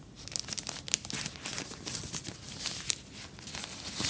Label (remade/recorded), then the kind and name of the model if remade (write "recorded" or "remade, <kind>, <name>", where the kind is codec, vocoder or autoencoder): recorded